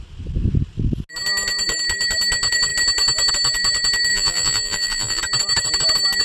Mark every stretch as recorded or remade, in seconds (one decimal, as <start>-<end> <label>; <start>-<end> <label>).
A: 0.0-4.1 recorded; 4.1-5.2 remade; 5.2-6.2 recorded